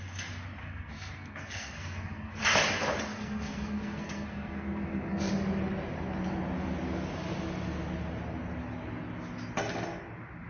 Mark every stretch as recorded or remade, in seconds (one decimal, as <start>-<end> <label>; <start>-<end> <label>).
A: 0.0-0.6 recorded; 0.6-2.4 remade; 2.4-3.1 recorded; 3.1-5.3 remade; 5.3-10.5 recorded